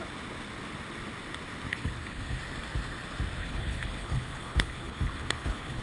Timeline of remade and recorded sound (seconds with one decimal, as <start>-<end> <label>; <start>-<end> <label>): 0.0-1.7 recorded; 1.7-2.4 remade; 2.4-3.4 recorded; 3.4-5.8 remade